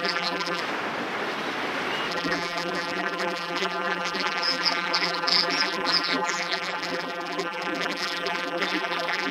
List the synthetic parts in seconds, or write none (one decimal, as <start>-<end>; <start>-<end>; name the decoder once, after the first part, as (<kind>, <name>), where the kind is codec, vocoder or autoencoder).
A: 0.0-0.6 (vocoder, BigVGAN v2); 2.1-9.3